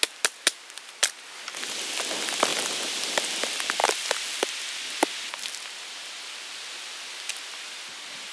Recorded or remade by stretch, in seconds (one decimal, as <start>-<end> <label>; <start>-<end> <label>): 0.0-2.5 recorded; 2.5-3.3 remade; 3.3-8.3 recorded